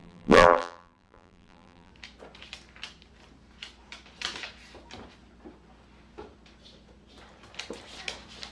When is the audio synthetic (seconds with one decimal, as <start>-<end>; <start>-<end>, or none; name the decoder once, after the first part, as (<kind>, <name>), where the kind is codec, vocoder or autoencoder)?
0.0-1.9 (vocoder, BigVGAN v2)